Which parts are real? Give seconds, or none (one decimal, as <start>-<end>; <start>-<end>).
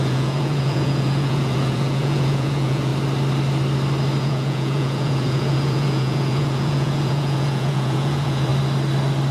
2.9-4.2; 8.5-9.3